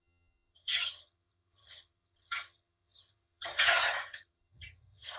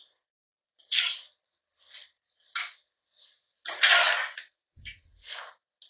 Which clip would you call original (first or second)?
second